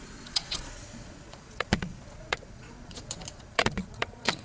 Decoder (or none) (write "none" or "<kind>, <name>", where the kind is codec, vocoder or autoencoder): vocoder, Vocos